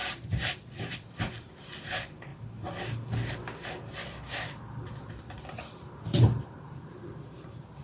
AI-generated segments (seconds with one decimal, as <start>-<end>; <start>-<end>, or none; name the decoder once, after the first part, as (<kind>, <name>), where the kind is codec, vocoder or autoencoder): 0.0-2.3 (vocoder, BigVGAN v2); 4.4-7.8